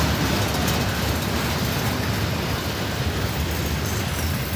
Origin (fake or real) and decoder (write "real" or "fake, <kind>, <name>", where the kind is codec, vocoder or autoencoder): real